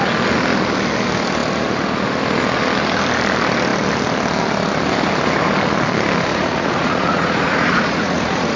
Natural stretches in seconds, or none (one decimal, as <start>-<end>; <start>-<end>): 0.0-6.3